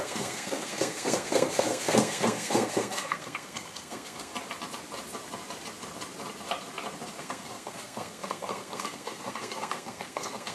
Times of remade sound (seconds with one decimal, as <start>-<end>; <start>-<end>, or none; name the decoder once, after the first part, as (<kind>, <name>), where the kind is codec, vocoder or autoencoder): 0.0-4.3 (codec, SNAC); 7.2-10.5